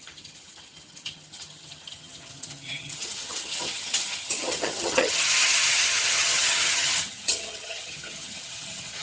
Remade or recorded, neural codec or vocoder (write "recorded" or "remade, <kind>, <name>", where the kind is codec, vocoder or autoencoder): remade, vocoder, HiFi-GAN